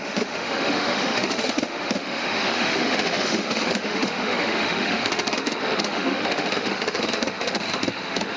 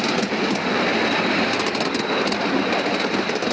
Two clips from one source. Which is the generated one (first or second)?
first